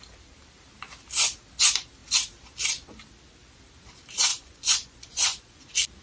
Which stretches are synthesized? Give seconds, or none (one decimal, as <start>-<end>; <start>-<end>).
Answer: 4.3-5.6